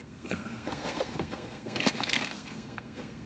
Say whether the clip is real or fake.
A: fake